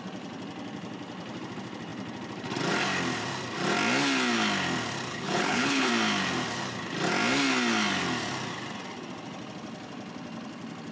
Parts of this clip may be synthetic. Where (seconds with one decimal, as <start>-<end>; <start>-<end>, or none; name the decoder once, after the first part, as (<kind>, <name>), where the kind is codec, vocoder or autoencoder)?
5.1-5.9 (codec, HILCodec)